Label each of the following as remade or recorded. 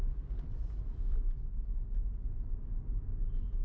recorded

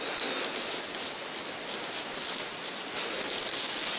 recorded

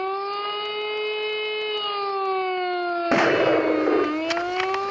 recorded